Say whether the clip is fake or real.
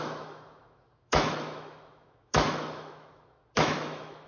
fake